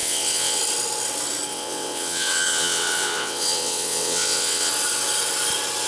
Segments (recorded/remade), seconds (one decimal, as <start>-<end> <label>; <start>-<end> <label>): 0.0-0.6 remade; 0.6-1.5 recorded; 1.5-4.7 remade; 4.7-5.9 recorded